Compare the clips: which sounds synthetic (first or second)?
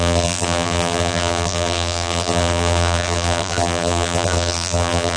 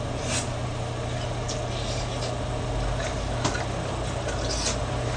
first